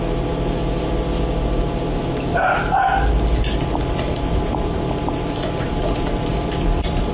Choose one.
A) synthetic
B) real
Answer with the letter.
B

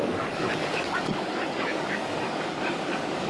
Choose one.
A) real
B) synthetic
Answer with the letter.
B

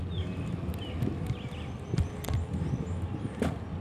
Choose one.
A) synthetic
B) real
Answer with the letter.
B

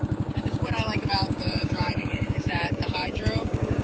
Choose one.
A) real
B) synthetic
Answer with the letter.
B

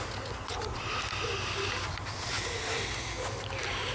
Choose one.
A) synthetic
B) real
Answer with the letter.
B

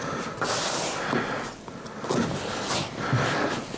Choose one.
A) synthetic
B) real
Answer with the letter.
B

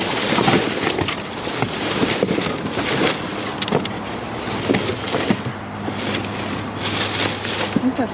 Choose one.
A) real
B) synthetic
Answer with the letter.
A